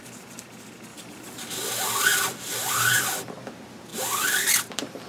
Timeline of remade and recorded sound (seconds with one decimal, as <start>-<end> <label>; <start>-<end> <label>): 0.0-0.9 recorded; 0.9-1.7 remade; 1.7-3.9 recorded; 3.9-5.1 remade